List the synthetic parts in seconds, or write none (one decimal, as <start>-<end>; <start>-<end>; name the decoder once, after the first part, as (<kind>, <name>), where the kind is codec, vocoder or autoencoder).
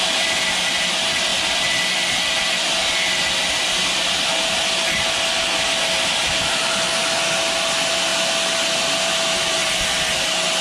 none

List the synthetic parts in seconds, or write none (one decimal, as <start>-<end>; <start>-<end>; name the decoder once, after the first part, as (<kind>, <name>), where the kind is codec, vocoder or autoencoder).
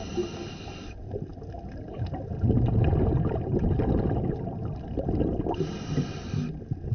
none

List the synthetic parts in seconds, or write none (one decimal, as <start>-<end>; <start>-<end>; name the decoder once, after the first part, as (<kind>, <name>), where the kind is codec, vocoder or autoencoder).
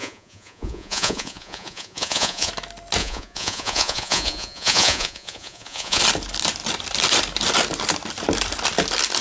0.0-2.5 (vocoder, Vocos); 3.0-6.0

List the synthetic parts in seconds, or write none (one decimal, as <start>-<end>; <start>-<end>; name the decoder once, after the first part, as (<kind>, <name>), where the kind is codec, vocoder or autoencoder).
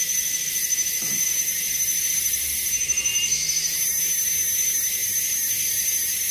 0.0-6.3 (vocoder, BigVGAN v2)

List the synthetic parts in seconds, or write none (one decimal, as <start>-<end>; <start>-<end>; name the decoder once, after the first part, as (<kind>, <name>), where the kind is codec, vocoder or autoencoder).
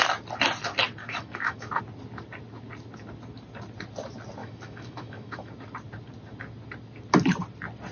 1.0-1.8 (autoencoder, DAC-VAE); 4.4-5.5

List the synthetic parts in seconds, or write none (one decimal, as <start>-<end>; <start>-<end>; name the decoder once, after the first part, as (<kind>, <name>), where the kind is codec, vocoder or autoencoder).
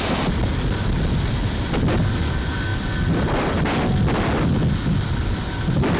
none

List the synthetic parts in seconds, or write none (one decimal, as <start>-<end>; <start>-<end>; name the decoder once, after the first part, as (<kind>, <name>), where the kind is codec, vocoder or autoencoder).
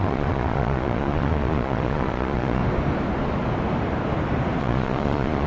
0.0-2.6 (vocoder, Vocos); 4.6-5.5